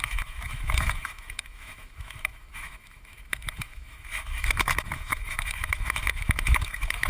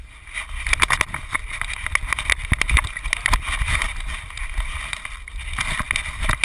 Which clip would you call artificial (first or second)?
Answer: first